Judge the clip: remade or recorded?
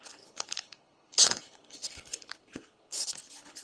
remade